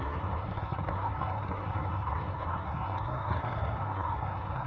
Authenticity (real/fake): fake